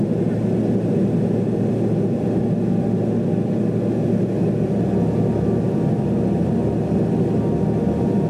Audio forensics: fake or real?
real